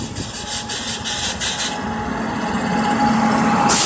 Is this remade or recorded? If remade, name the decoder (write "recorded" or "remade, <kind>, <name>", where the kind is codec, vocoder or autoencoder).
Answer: recorded